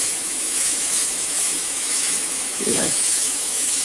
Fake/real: fake